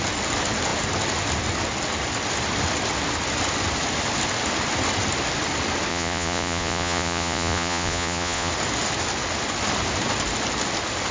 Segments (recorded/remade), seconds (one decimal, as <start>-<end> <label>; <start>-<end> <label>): 0.0-5.9 recorded; 5.9-8.5 remade; 8.5-11.1 recorded